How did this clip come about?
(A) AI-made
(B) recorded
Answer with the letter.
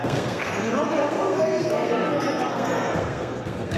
A